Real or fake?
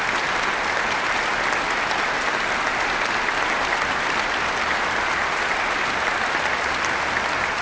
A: real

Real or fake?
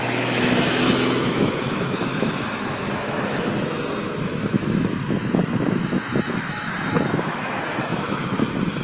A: fake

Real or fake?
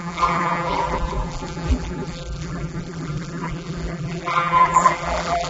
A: fake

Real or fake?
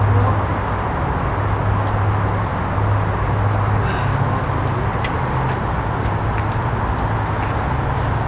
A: real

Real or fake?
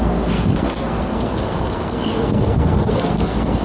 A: fake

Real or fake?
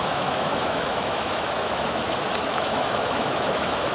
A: fake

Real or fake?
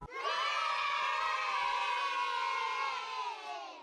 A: real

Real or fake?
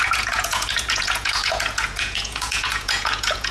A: fake